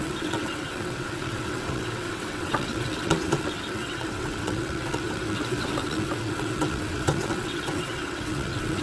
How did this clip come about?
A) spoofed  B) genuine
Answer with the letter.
A